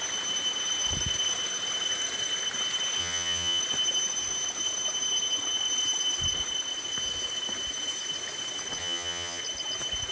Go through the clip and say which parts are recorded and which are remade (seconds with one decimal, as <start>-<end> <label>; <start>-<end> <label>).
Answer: 0.0-3.0 recorded; 3.0-3.6 remade; 3.6-8.8 recorded; 8.8-9.4 remade; 9.4-10.1 recorded